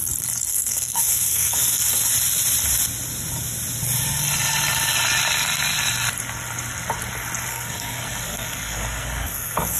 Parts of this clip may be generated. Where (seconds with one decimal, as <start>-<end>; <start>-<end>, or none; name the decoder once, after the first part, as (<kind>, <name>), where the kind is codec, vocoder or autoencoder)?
0.5-2.0 (codec, SNAC); 7.5-9.8